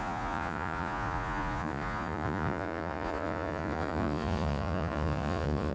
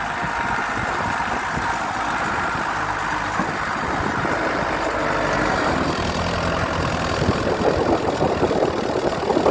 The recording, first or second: second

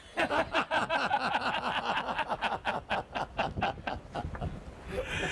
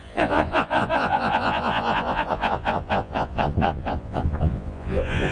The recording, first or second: first